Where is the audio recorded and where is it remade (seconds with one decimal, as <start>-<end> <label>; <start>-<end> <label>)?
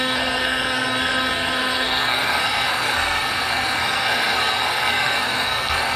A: 0.0-6.0 remade